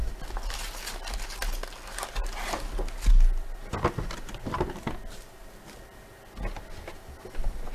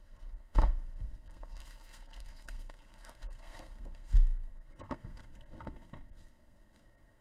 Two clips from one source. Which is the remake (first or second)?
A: second